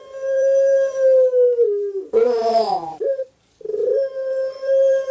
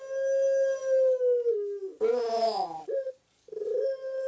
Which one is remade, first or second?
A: first